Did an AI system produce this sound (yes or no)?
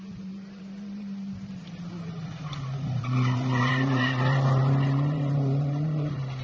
yes